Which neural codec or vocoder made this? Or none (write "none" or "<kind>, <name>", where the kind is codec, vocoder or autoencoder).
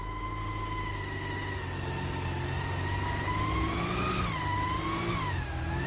none